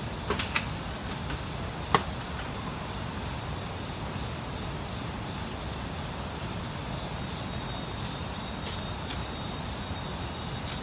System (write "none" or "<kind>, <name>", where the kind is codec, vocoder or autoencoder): none